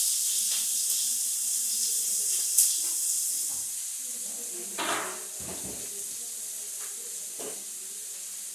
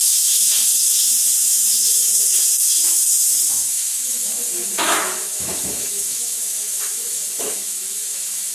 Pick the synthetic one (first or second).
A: second